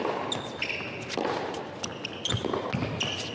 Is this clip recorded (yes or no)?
yes